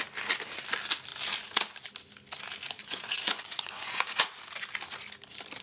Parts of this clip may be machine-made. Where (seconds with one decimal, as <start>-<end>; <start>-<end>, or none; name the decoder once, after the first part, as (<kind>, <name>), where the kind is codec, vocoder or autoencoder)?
2.8-4.2 (vocoder, Vocos)